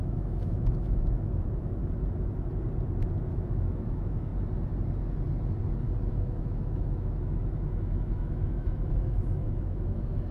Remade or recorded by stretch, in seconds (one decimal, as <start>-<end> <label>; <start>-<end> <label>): 0.0-1.8 remade; 1.8-3.3 recorded; 3.3-4.3 remade; 4.3-6.1 recorded; 6.1-10.3 remade